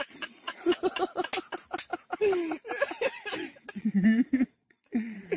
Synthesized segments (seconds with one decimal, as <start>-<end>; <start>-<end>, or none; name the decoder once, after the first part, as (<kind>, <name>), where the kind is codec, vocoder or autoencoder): 0.0-0.5 (vocoder, Vocos); 3.7-5.4